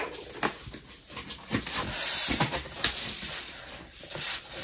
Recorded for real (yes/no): yes